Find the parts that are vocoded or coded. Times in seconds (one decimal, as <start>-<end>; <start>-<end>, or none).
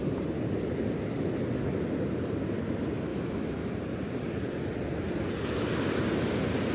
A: 3.1-3.7